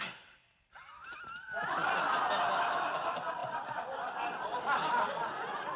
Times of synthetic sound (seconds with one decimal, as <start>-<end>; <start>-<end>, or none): none